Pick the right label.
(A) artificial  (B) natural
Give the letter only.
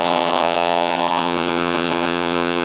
A